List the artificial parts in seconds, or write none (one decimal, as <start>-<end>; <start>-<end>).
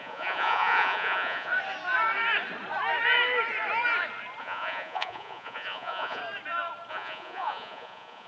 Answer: 0.0-1.5; 4.4-6.2; 6.9-8.3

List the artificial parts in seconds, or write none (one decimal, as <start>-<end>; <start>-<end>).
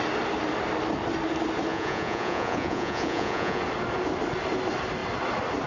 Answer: 1.7-3.6